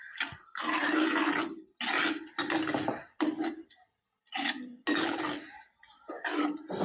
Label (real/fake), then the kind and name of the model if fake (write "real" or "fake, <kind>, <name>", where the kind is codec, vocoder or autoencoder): real